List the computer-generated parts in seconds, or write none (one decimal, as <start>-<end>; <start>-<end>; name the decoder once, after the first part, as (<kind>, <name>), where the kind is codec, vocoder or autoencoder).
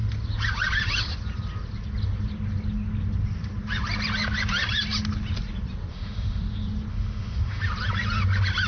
5.9-6.4 (autoencoder, DAC-VAE); 6.9-7.6